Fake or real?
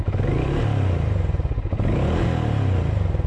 real